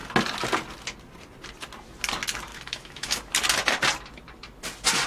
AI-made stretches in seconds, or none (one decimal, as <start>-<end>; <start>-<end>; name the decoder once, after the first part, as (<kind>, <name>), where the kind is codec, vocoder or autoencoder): 2.5-3.2 (autoencoder, DAC-VAE)